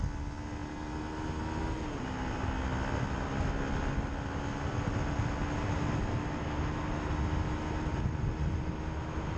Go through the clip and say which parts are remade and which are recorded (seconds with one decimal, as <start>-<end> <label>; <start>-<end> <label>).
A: 0.0-9.4 recorded